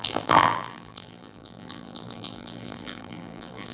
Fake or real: fake